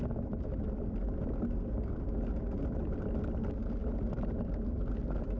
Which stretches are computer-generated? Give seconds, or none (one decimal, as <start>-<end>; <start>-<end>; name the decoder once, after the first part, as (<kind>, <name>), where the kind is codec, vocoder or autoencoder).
none